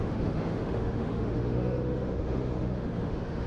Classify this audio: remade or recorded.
remade